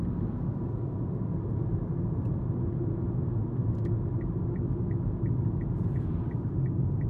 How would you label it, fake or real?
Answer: real